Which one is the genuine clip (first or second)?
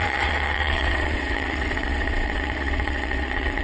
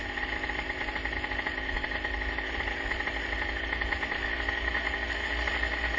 second